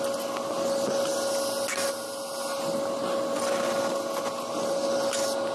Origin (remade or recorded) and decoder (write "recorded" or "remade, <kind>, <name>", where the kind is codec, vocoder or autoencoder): recorded